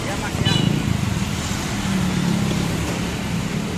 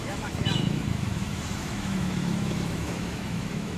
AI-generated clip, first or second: second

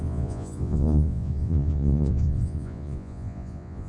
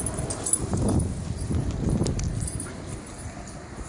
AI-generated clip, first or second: first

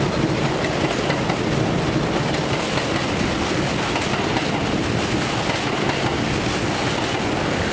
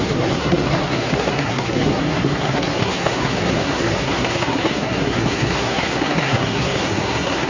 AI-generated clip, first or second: second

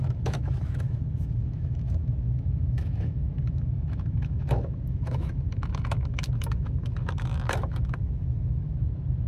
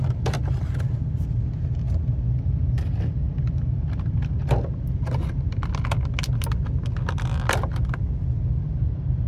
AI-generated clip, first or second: first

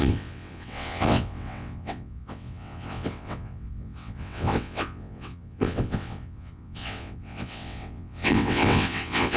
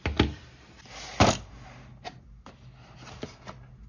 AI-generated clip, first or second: first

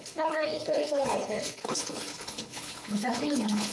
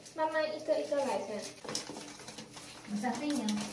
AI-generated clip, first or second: first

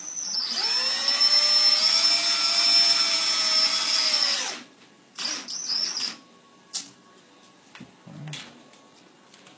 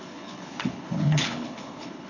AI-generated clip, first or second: second